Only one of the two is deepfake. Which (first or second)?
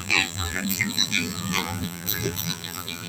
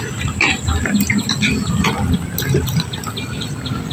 first